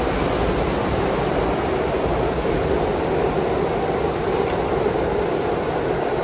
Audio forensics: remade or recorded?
remade